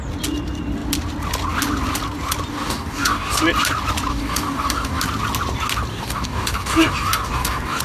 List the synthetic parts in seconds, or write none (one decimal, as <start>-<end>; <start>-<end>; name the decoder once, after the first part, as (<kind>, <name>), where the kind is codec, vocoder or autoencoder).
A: 2.5-3.4 (codec, DAC); 4.1-5.0; 5.9-7.8